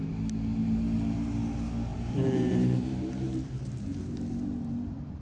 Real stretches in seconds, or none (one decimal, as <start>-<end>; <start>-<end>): 0.0-1.9